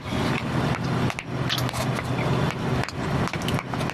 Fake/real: real